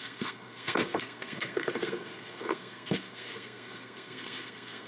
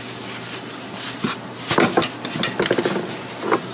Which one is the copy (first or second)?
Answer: first